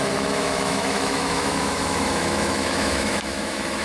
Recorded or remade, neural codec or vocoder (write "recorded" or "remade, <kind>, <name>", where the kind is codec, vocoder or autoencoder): remade, autoencoder, DAC-VAE